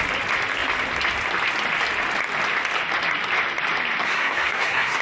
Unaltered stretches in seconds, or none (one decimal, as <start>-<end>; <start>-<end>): 0.0-4.0